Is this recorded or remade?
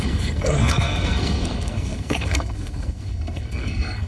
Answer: remade